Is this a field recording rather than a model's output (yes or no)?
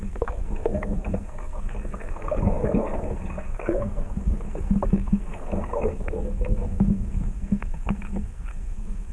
no